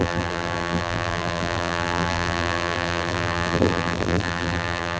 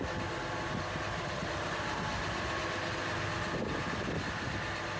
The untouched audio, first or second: second